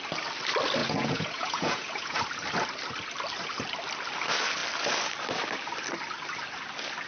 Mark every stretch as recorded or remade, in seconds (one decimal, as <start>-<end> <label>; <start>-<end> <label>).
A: 0.0-0.8 recorded; 0.8-2.2 remade; 2.2-7.1 recorded